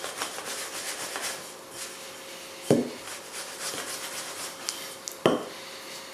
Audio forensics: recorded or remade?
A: recorded